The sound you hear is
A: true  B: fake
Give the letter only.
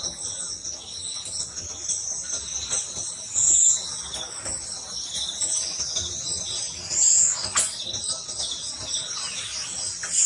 A